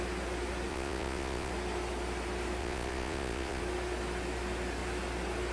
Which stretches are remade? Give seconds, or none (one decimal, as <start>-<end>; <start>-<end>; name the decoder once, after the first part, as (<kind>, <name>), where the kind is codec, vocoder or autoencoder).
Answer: 0.7-1.5 (vocoder, Vocos); 2.6-3.6

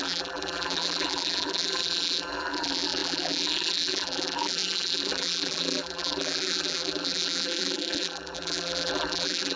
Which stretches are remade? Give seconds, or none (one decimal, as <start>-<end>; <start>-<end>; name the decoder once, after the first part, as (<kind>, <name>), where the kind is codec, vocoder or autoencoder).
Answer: 0.0-9.6 (vocoder, BigVGAN v2)

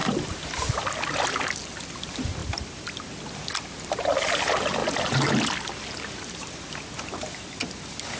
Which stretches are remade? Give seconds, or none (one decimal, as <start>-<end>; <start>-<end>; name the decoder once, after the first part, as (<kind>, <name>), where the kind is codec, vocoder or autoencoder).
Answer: 0.0-0.7 (vocoder, BigVGAN v2); 2.4-3.1; 4.8-5.3

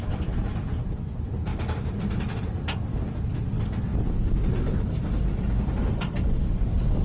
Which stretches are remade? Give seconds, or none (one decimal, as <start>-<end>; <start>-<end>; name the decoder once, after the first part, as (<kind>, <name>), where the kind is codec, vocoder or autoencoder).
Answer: 3.9-5.1 (vocoder, BigVGAN v2)

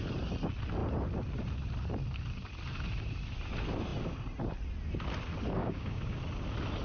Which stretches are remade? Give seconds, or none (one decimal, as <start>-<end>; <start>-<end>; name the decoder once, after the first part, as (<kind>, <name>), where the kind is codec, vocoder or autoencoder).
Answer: 5.6-6.2 (codec, DAC)

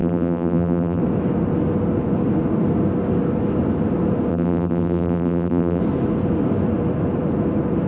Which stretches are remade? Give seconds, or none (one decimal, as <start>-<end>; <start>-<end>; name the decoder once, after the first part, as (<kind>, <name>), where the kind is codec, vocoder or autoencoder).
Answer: 0.0-1.0 (vocoder, BigVGAN v2); 4.3-5.8